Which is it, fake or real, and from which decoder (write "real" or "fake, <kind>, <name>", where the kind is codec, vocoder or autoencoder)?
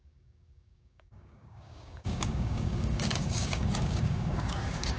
fake, codec, DAC